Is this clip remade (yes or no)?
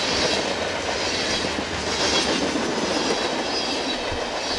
no